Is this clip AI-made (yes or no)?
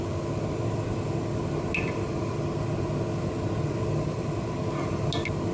no